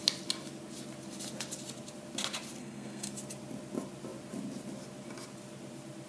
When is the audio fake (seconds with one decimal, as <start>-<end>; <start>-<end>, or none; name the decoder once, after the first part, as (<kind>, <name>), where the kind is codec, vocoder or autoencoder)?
2.6-3.1 (codec, SNAC)